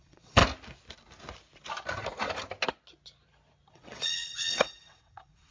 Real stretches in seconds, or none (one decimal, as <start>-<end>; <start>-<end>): 0.4-3.7